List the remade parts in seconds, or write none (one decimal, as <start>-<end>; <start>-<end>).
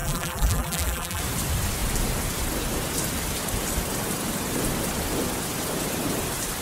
0.0-1.2